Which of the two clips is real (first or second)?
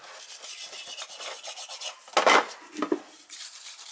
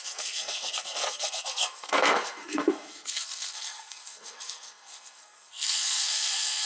first